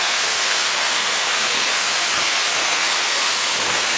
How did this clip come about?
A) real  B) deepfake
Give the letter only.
B